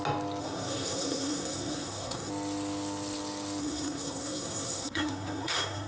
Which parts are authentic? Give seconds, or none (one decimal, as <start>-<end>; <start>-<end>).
0.0-0.4; 2.3-3.6